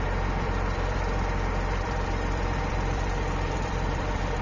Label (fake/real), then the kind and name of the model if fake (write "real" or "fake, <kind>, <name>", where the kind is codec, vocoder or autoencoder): fake, vocoder, BigVGAN v2